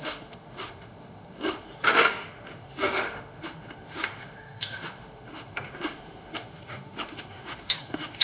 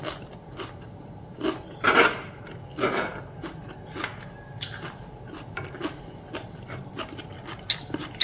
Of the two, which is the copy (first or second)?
first